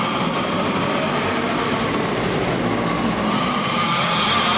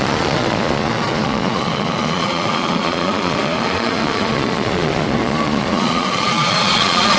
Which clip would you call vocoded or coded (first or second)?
second